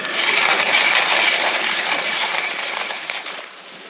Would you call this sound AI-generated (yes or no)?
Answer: yes